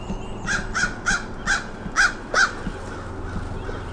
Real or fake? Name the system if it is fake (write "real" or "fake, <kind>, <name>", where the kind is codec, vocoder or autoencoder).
real